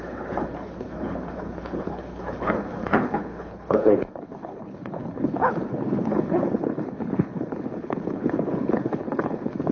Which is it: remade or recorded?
remade